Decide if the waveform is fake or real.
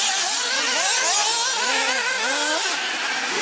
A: real